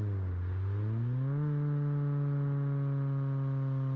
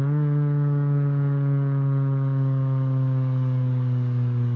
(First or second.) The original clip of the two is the first